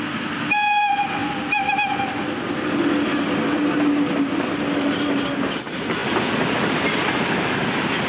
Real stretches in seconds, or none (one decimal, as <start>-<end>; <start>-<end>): 0.0-8.1